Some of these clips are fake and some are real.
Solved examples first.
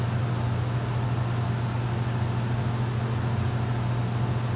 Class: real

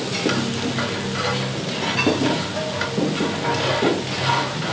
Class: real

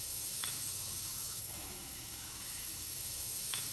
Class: fake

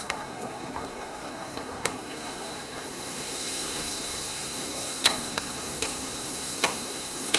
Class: fake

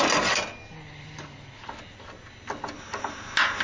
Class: real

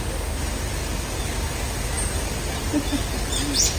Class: real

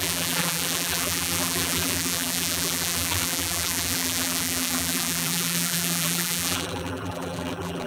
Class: fake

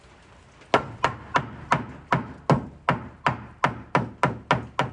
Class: real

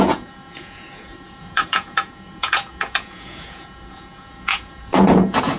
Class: fake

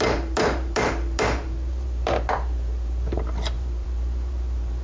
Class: fake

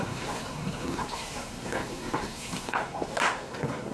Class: fake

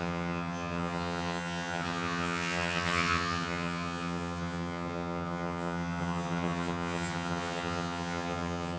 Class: fake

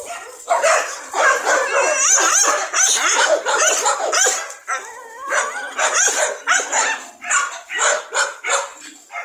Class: real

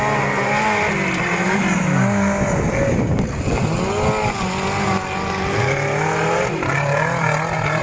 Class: real